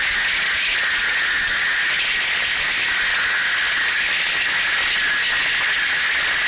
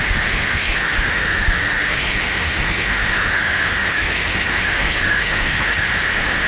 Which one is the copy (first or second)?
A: second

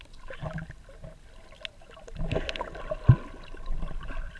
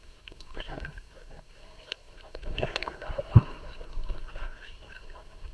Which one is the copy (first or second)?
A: second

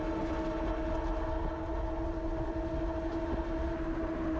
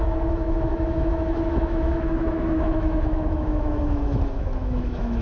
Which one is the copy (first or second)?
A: second